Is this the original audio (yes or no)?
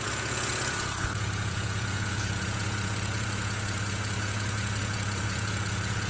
no